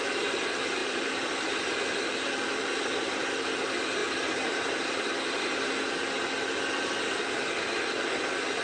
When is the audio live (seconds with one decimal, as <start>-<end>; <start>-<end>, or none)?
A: 0.0-0.8; 1.3-4.0; 5.7-8.6